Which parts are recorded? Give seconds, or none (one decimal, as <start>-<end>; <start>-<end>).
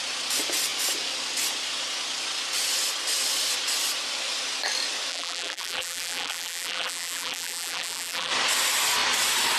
0.0-5.1; 8.3-9.6